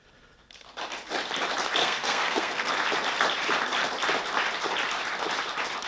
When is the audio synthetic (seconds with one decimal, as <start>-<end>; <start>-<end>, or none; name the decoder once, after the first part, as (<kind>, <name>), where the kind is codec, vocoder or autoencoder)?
1.8-2.7 (codec, SNAC)